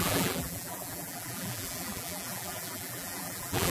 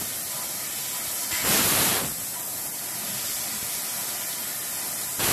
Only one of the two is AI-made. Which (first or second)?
first